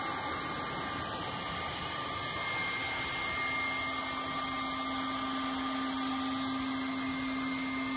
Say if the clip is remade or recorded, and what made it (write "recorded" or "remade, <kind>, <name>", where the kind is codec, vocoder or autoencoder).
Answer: recorded